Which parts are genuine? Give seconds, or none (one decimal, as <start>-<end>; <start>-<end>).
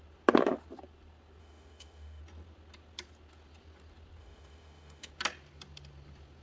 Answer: 0.0-1.4; 2.2-4.2; 5.1-6.4